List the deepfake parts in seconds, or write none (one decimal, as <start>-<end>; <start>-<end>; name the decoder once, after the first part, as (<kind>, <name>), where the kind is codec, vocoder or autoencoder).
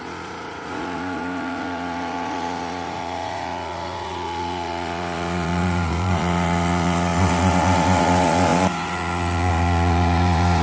0.0-10.6 (vocoder, Vocos)